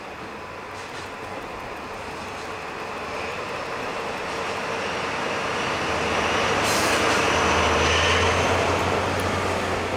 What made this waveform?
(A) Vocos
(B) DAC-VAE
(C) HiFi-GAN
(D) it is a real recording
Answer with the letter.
D